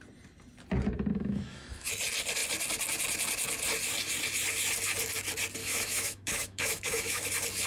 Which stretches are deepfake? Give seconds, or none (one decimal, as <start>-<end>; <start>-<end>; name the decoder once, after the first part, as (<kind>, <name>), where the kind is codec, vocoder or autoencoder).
1.1-1.9 (autoencoder, DAC-VAE); 5.6-7.3